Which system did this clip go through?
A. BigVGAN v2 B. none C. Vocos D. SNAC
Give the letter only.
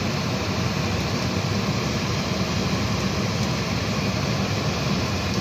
B